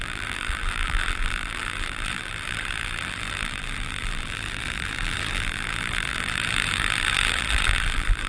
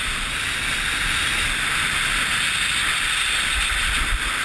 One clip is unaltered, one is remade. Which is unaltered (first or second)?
second